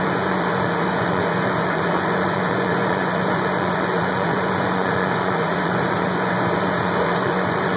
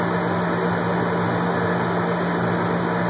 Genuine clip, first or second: second